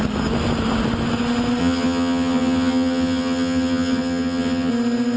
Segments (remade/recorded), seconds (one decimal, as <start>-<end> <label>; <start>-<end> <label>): 0.0-1.6 recorded; 1.6-4.7 remade; 4.7-5.2 recorded